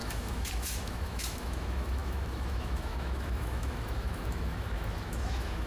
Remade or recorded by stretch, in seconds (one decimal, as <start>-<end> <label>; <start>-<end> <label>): 0.0-5.7 remade